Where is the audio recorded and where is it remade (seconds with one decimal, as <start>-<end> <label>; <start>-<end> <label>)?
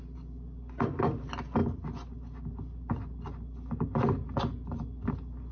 0.0-5.5 recorded